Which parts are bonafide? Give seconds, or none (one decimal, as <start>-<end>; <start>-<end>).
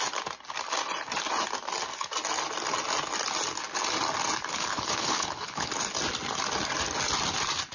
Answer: 0.0-4.5; 5.7-7.7